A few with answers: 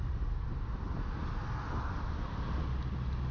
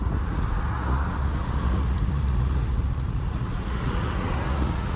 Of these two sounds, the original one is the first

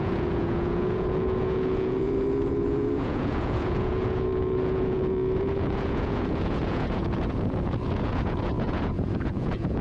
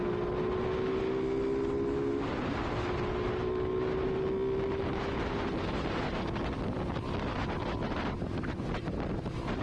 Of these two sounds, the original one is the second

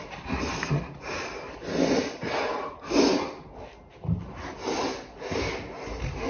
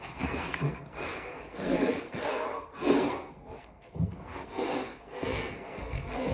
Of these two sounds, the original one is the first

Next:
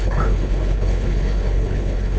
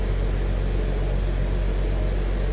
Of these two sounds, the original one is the second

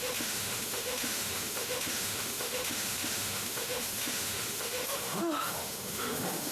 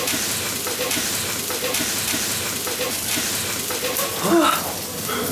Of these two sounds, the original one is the second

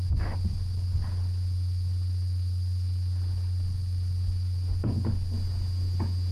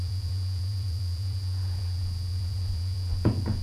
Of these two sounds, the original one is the first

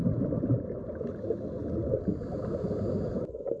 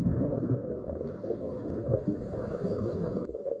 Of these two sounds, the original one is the first